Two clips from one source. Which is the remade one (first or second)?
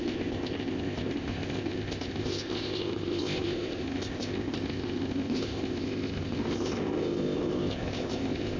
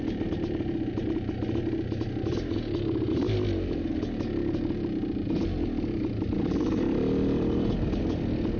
first